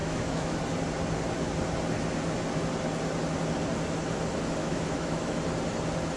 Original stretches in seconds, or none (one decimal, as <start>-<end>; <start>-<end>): 0.6-4.6; 5.4-6.2